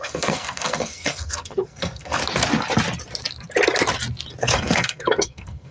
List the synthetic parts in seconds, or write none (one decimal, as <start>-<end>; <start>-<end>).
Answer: 0.0-2.2; 4.4-5.7